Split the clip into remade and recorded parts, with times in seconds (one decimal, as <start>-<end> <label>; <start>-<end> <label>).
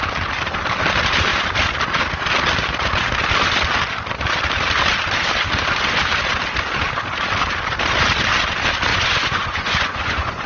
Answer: 0.0-8.9 recorded; 8.9-10.5 remade